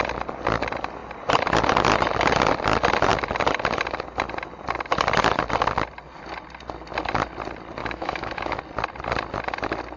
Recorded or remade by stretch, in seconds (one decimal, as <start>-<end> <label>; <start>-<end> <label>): 0.0-7.8 recorded; 7.8-8.6 remade; 8.6-10.0 recorded